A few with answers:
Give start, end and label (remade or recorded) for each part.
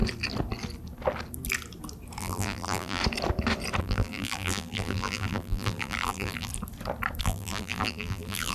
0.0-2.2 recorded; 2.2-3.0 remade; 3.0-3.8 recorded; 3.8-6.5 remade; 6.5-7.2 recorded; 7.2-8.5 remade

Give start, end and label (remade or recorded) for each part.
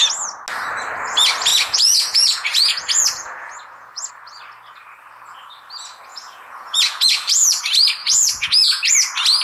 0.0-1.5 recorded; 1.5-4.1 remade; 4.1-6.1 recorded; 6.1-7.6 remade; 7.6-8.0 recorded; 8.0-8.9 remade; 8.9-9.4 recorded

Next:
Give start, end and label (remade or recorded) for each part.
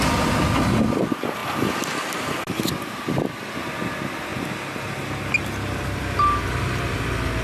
0.0-7.4 recorded